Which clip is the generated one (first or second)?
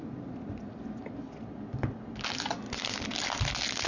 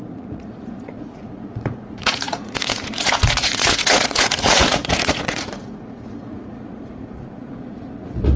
second